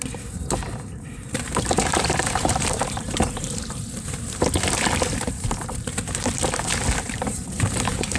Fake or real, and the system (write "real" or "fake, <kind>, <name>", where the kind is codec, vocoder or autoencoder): fake, vocoder, BigVGAN v2